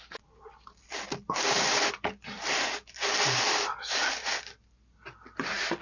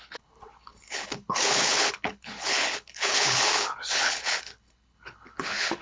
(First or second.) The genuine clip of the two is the first